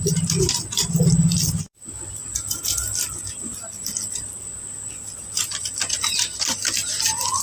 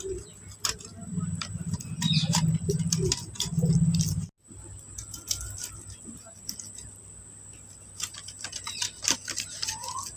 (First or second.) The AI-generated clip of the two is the first